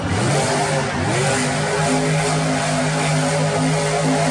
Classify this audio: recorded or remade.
recorded